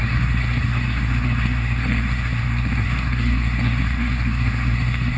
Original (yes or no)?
no